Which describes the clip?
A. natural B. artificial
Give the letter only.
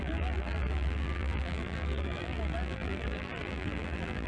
B